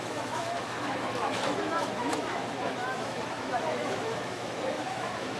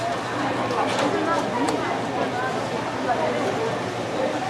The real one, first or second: second